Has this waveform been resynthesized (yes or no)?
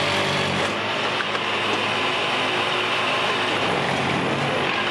no